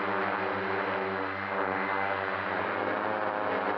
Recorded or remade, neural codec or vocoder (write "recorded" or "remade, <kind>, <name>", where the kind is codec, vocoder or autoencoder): recorded